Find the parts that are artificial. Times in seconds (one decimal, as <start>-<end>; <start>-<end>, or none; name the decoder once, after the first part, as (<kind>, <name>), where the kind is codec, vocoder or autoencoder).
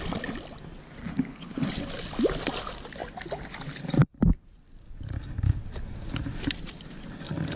1.0-1.7 (codec, HILCodec)